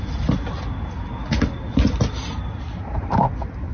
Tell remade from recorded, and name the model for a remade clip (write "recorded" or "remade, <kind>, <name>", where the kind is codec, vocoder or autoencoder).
recorded